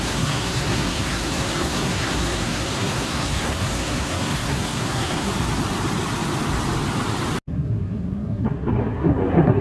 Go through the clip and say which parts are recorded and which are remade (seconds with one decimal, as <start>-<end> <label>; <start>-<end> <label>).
0.0-5.3 remade; 5.3-7.5 recorded; 7.5-9.6 remade